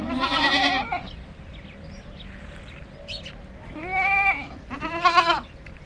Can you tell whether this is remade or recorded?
recorded